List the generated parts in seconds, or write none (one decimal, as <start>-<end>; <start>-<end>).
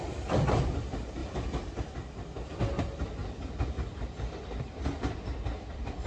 0.0-6.1